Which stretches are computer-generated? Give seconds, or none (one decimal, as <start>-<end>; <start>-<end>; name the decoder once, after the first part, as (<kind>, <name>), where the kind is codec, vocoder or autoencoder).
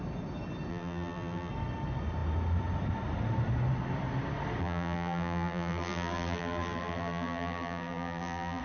0.7-1.5 (vocoder, BigVGAN v2); 4.6-8.6